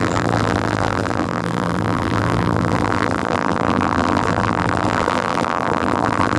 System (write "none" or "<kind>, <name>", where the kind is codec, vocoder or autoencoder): vocoder, BigVGAN v2